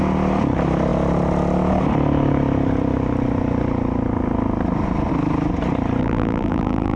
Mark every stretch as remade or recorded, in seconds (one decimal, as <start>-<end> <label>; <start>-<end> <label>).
0.0-6.0 recorded; 6.0-7.0 remade